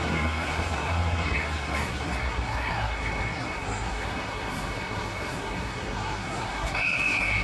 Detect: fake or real fake